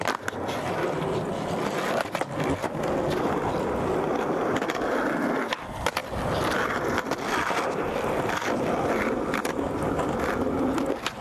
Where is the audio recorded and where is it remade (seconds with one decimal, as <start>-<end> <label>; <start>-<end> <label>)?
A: 0.0-11.2 recorded